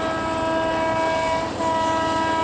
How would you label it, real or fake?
real